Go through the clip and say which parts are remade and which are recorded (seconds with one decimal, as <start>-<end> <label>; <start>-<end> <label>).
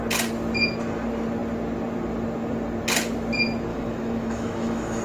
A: 0.0-3.7 recorded; 3.7-5.0 remade